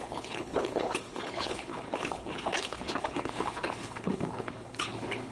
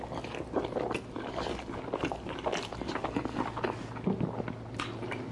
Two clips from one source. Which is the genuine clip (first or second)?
second